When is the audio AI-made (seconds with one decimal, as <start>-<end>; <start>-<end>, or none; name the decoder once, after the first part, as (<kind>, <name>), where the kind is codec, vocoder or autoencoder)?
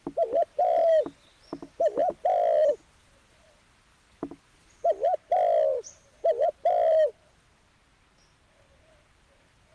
none